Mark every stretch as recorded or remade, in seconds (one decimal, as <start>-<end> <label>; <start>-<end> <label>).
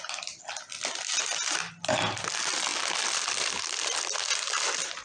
0.0-5.0 recorded